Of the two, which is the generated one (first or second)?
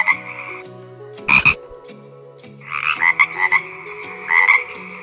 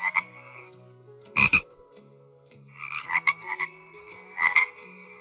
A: second